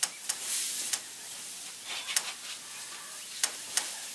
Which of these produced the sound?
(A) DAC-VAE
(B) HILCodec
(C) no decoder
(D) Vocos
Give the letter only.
C